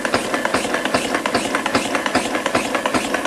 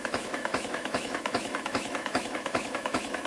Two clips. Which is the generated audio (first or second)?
second